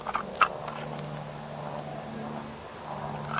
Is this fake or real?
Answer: real